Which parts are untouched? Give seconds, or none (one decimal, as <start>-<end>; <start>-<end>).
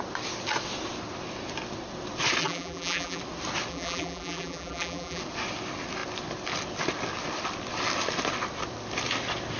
0.0-2.4; 3.2-3.7; 5.2-9.6